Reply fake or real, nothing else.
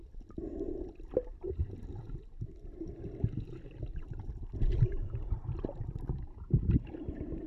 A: real